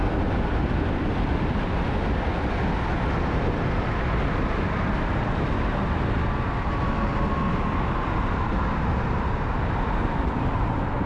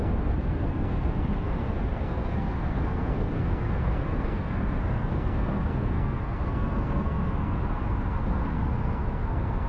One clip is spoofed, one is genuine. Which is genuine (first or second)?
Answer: first